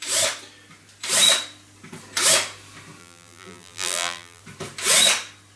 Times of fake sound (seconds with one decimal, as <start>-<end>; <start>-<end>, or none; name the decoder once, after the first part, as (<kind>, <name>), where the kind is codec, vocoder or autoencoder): 3.0-4.4 (vocoder, BigVGAN v2)